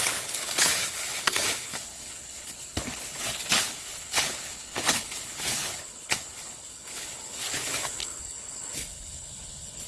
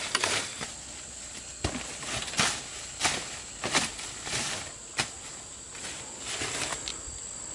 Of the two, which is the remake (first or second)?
first